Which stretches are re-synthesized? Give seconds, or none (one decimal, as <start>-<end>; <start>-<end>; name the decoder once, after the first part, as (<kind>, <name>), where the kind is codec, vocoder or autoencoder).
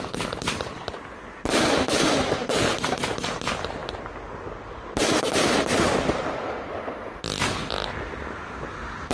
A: none